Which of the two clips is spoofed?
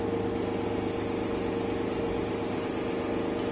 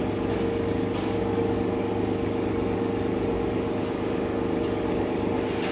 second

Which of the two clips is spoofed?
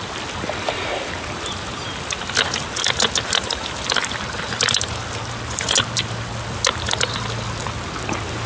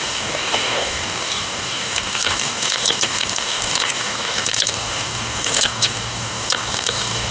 second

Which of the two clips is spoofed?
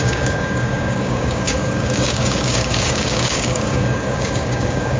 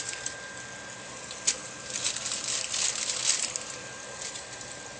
first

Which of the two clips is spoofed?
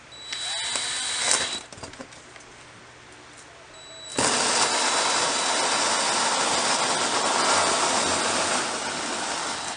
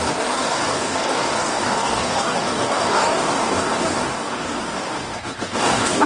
second